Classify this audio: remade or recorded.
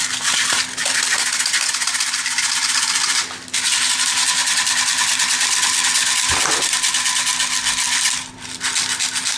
recorded